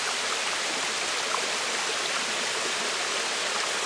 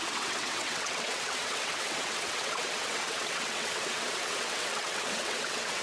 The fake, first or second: second